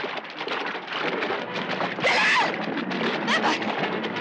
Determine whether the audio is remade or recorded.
recorded